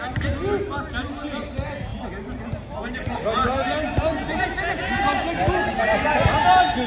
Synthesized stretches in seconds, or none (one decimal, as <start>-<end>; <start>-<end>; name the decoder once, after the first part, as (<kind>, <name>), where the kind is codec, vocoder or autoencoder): none

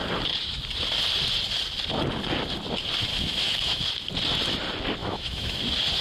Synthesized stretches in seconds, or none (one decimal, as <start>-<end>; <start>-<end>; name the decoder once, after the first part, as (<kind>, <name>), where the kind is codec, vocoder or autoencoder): 3.1-3.9 (autoencoder, DAC-VAE); 5.0-5.6

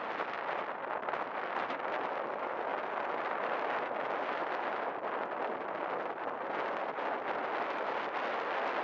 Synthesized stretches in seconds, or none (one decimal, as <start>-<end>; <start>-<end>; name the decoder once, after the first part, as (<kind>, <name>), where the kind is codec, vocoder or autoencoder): none

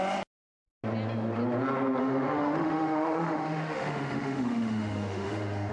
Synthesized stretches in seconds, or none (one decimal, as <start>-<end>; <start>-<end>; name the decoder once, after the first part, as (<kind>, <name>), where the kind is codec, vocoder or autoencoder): 2.0-5.7 (autoencoder, DAC-VAE)

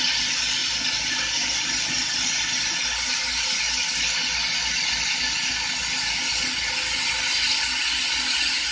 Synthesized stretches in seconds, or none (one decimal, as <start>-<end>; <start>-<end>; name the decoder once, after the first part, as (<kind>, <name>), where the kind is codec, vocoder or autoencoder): none